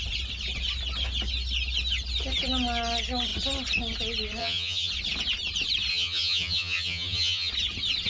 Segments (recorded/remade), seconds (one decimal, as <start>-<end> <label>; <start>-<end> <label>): 0.0-4.4 recorded; 4.4-4.9 remade; 4.9-5.9 recorded; 5.9-7.5 remade; 7.5-8.1 recorded